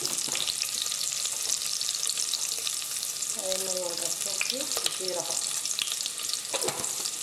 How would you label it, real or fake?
real